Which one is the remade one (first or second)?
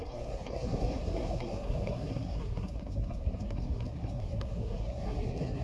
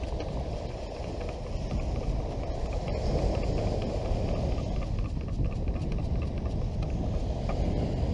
first